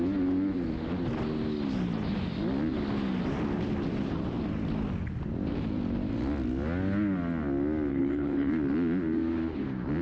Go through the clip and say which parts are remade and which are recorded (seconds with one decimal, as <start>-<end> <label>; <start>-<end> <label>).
0.0-7.9 recorded; 7.9-8.5 remade; 8.5-10.0 recorded